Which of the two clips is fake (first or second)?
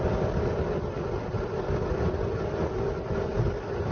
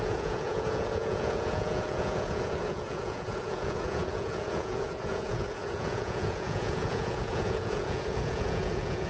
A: second